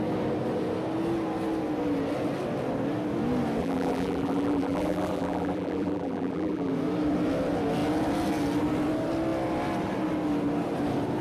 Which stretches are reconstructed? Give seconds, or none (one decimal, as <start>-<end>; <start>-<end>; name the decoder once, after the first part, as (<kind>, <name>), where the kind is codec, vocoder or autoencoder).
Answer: 3.6-6.7 (vocoder, BigVGAN v2)

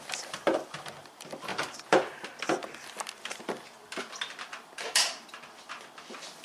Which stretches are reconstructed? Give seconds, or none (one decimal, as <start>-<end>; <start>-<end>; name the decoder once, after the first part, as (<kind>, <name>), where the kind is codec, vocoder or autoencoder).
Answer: 0.0-1.5 (vocoder, BigVGAN v2); 4.0-6.4

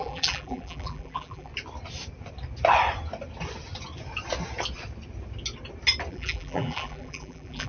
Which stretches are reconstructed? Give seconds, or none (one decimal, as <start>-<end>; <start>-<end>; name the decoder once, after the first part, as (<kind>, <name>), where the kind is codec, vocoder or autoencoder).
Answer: 0.0-1.5 (vocoder, BigVGAN v2); 6.1-7.7

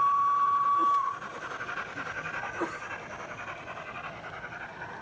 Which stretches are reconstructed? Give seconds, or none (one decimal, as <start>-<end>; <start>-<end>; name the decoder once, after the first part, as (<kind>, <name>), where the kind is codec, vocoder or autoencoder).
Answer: none

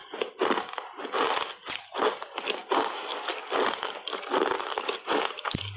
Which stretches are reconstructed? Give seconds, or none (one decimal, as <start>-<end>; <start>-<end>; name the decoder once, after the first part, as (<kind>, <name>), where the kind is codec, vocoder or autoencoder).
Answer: none

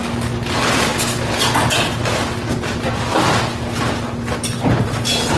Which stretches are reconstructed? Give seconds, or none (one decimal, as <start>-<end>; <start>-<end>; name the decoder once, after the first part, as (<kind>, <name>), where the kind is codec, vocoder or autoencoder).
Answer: none

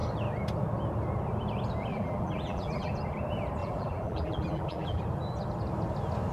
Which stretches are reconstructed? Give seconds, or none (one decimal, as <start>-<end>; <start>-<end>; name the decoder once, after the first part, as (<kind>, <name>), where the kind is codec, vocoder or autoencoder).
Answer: 1.9-2.9 (vocoder, BigVGAN v2); 3.6-5.0